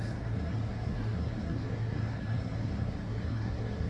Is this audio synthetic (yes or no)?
yes